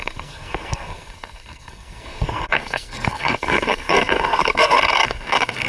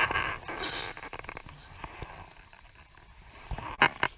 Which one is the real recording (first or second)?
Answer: second